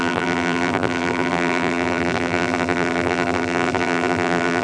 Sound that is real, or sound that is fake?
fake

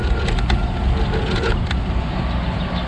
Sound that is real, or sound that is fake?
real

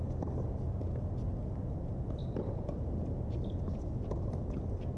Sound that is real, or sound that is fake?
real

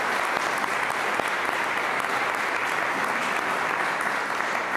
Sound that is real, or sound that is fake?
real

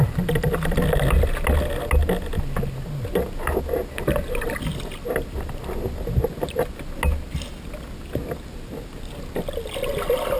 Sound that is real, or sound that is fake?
real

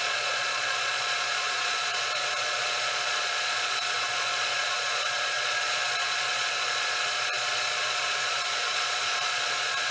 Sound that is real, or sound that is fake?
fake